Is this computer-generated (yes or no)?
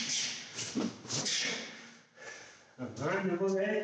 no